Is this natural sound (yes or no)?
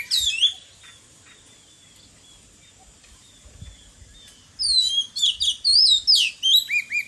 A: yes